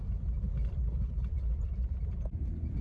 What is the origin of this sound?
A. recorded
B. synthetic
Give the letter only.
B